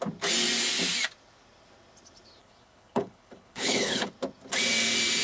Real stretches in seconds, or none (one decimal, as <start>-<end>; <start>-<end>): 0.0-2.4; 4.1-5.2